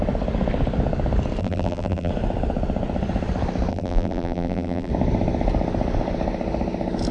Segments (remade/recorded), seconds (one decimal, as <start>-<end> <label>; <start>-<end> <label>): 0.0-1.4 recorded; 1.4-2.1 remade; 2.1-3.7 recorded; 3.7-4.9 remade; 4.9-7.1 recorded